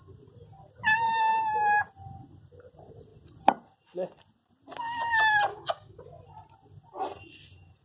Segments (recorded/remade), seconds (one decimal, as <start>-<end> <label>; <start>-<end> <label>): 0.0-5.5 recorded; 5.5-6.0 remade; 6.0-7.8 recorded